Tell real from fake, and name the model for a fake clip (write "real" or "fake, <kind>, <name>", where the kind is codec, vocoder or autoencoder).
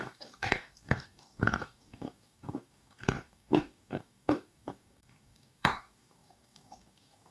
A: fake, codec, DAC